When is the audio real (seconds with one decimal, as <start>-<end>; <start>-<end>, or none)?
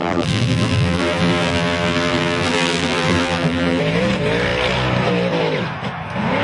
3.8-6.4